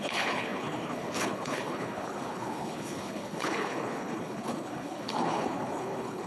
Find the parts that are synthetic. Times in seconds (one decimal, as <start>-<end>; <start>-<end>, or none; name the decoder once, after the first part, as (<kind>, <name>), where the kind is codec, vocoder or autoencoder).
0.0-6.3 (codec, HILCodec)